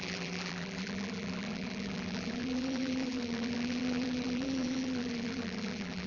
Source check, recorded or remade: remade